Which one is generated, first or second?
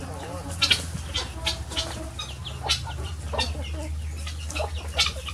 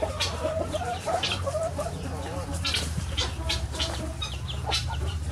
second